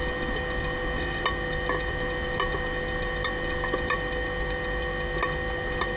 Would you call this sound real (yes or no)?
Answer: yes